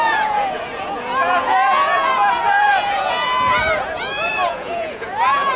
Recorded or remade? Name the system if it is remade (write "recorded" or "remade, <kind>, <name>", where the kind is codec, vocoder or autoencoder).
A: remade, vocoder, Vocos